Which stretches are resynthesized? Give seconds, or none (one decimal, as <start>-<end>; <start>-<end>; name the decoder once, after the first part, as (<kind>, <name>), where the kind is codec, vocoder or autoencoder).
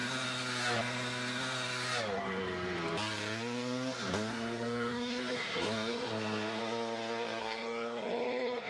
4.3-6.6 (codec, SNAC); 7.4-8.7